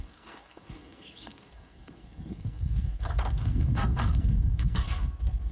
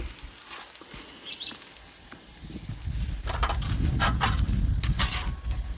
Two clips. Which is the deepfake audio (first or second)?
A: first